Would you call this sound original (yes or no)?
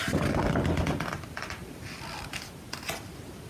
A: yes